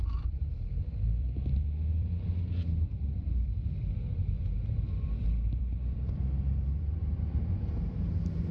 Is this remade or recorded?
remade